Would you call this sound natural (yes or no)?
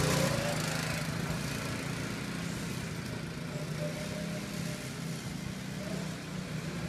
yes